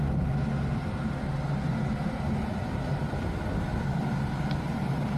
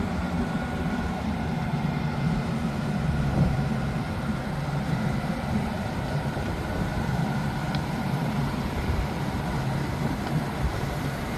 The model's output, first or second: second